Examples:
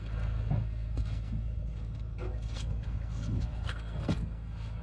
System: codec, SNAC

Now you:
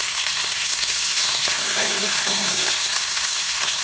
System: codec, SNAC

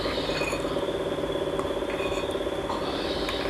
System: none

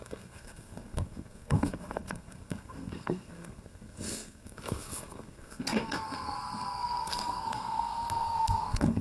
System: codec, SNAC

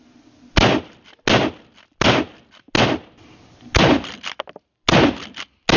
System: none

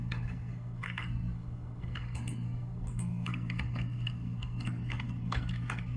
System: codec, SNAC